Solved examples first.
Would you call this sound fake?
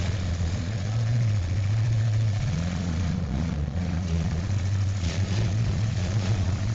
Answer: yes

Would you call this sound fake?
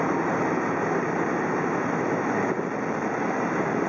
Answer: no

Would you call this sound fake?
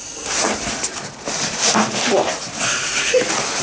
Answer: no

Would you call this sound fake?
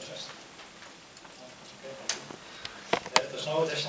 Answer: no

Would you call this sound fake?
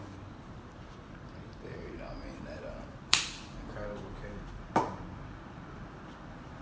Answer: yes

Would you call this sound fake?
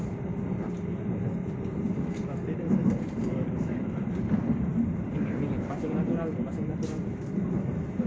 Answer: yes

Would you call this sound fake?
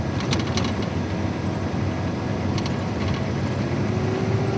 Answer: no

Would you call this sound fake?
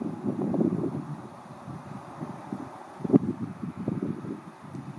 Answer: no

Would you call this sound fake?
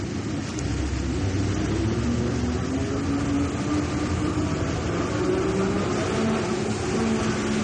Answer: no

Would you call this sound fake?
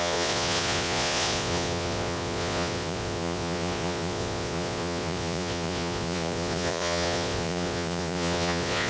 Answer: yes